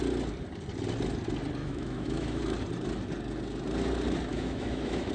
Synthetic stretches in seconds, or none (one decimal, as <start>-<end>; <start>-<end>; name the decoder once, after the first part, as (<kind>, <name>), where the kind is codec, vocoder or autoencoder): 1.6-2.4 (autoencoder, DAC-VAE); 4.3-5.1